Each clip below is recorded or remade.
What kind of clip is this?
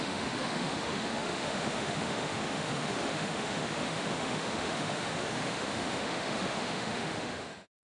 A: remade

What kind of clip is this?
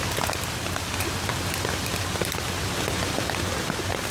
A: recorded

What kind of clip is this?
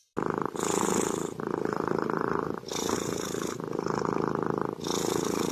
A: recorded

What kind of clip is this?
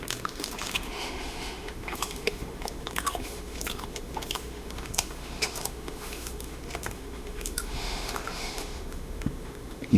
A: remade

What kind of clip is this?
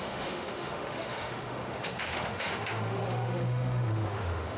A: remade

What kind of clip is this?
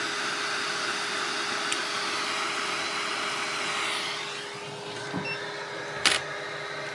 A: recorded